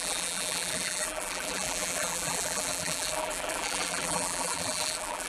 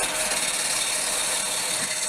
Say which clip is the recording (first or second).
second